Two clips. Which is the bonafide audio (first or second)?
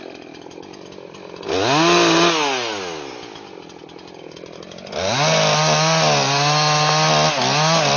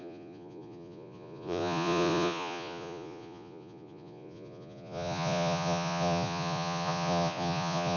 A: first